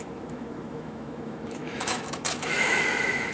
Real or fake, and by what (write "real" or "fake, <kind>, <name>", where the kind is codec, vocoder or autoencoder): fake, autoencoder, DAC-VAE